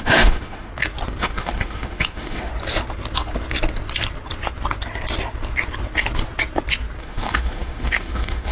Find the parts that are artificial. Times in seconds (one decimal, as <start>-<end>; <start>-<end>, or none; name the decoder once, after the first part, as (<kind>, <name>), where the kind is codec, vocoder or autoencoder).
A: 0.0-0.7 (autoencoder, DAC-VAE); 1.2-2.5; 7.0-8.5